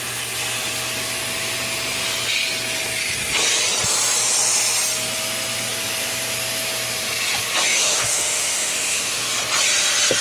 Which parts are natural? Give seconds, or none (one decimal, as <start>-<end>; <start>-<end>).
0.0-7.7; 9.3-10.2